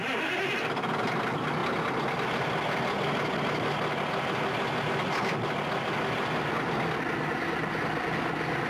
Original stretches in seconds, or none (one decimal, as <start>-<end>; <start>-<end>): 0.0-8.7